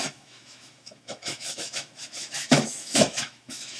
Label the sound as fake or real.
fake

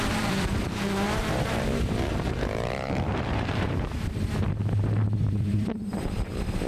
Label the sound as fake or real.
fake